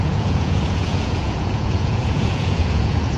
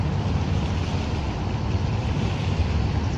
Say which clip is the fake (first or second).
first